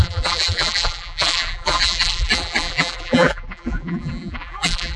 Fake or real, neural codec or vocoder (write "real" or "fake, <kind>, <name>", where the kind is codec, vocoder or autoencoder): fake, vocoder, BigVGAN v2